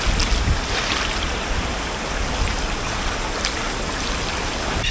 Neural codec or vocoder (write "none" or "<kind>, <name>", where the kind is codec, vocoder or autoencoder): none